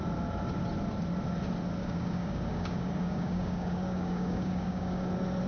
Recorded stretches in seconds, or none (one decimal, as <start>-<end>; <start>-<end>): 0.0-1.8; 5.1-5.5